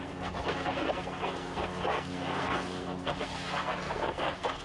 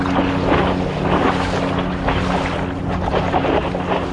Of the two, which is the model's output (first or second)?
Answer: first